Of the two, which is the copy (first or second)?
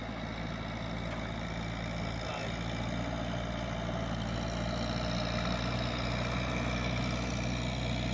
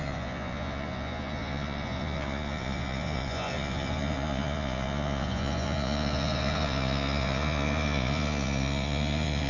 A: second